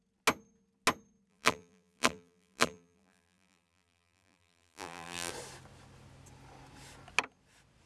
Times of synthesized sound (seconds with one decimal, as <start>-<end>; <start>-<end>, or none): 1.3-5.3